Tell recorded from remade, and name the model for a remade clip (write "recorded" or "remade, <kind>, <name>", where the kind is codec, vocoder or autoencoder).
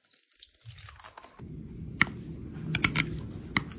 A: recorded